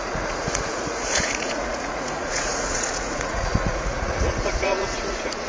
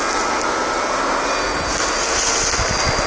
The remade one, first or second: first